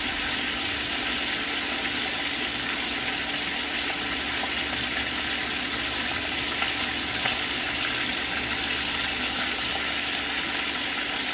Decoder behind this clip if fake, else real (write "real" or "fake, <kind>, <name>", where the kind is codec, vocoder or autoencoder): real